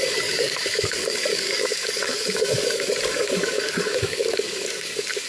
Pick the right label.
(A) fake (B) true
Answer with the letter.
A